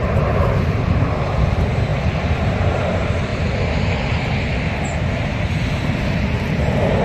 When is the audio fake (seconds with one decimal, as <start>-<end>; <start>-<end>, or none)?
0.0-3.3; 4.9-7.0